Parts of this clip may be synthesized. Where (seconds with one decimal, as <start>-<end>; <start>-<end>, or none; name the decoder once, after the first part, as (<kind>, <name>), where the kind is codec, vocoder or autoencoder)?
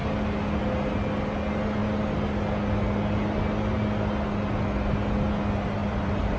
5.8-6.4 (vocoder, BigVGAN v2)